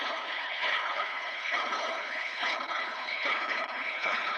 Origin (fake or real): fake